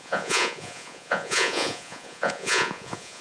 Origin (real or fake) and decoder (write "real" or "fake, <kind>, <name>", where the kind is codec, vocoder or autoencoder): fake, vocoder, Vocos